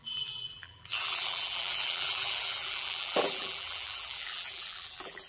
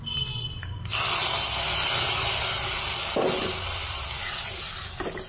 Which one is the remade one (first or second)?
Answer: first